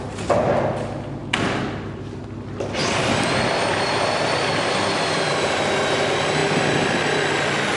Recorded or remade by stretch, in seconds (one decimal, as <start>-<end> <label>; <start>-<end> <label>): 0.0-2.8 recorded; 2.8-5.5 remade; 5.5-7.8 recorded

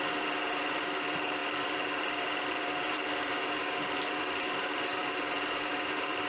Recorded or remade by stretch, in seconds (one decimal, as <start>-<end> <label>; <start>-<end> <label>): 0.0-6.3 remade

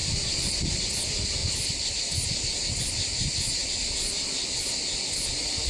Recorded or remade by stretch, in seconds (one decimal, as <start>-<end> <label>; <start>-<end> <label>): 0.0-0.7 remade; 0.7-1.4 recorded; 1.4-1.9 remade; 1.9-5.7 recorded